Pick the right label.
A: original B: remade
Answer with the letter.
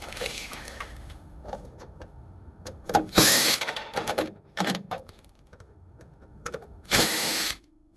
B